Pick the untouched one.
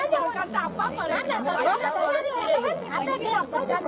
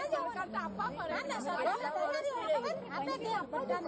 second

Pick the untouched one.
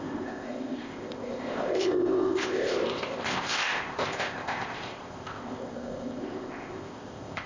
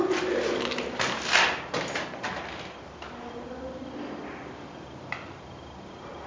second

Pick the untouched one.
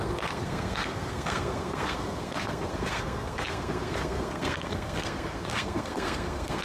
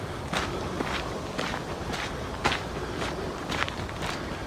second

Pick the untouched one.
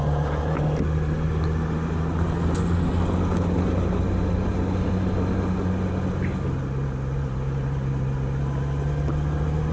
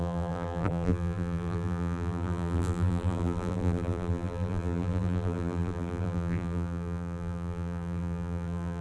first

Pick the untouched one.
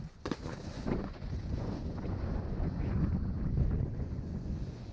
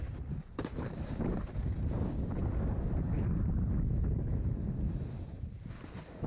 second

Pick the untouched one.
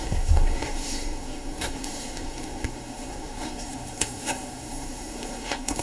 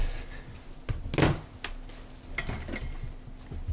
second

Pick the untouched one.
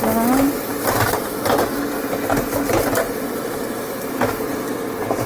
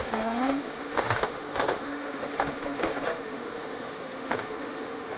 first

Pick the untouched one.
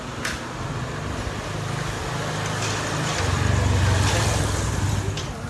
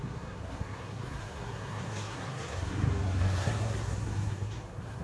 first